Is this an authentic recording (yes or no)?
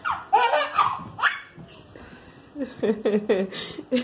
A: yes